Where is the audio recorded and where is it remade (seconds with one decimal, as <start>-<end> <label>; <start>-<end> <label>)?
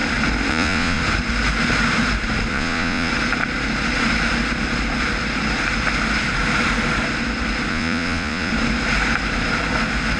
0.0-0.5 recorded; 0.5-1.0 remade; 1.0-2.5 recorded; 2.5-3.1 remade; 3.1-7.7 recorded; 7.7-8.5 remade; 8.5-10.2 recorded